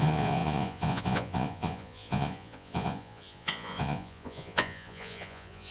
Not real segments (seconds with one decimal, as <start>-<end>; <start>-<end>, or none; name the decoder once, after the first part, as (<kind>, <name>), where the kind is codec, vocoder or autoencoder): 0.0-5.7 (vocoder, Vocos)